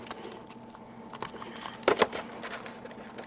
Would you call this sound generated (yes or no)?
no